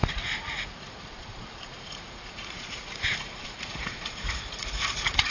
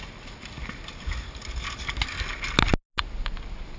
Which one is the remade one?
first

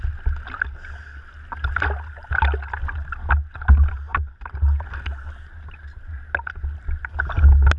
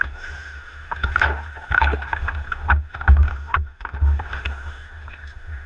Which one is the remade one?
second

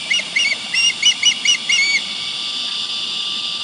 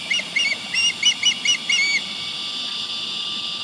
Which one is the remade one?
first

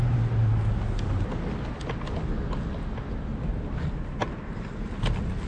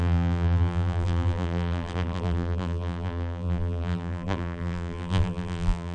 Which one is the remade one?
second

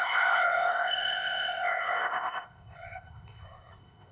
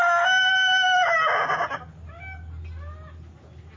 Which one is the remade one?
first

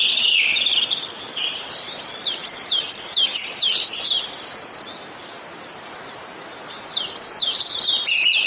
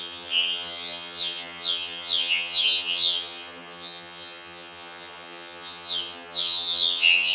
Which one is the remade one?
second